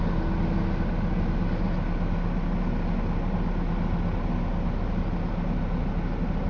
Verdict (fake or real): real